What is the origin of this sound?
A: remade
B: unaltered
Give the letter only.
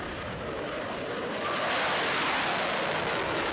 B